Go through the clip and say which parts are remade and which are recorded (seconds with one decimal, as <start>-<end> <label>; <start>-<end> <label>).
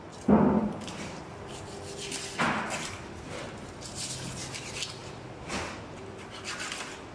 0.0-7.1 recorded